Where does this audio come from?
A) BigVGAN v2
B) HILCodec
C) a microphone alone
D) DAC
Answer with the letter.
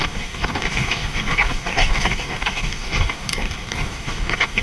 D